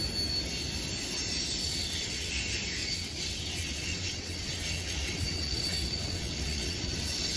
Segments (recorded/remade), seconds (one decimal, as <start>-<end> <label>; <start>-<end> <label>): 0.0-1.6 recorded; 1.6-2.3 remade; 2.3-2.8 recorded; 2.8-7.4 remade